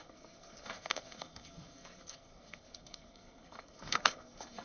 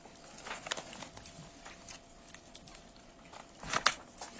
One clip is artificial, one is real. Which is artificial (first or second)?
first